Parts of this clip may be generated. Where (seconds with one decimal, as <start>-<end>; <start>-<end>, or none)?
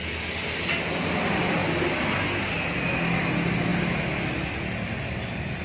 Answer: none